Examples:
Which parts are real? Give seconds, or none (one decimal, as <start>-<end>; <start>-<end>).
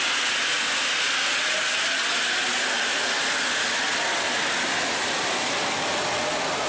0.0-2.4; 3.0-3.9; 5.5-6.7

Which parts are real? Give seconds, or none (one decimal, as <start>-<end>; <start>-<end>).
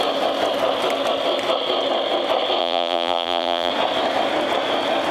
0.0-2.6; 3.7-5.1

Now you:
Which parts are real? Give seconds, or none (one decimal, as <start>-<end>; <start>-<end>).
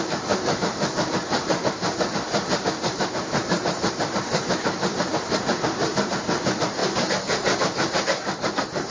none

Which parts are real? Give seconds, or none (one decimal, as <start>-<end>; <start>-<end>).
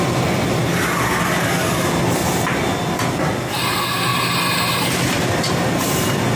0.6-1.7; 2.2-3.5; 4.1-5.0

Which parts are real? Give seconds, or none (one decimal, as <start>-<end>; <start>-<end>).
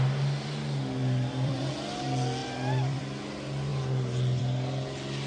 0.0-1.0; 1.7-2.4; 3.0-5.3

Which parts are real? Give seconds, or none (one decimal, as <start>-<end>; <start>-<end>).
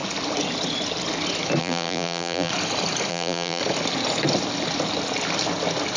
0.0-1.6; 2.5-3.1; 3.6-6.0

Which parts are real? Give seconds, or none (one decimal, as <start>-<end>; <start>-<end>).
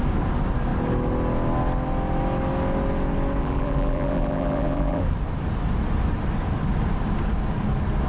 0.0-3.4; 5.0-8.1